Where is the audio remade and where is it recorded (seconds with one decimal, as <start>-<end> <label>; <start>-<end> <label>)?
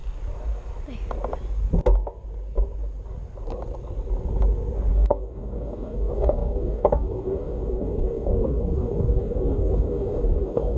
0.0-4.9 recorded; 4.9-10.8 remade